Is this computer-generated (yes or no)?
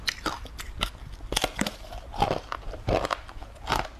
no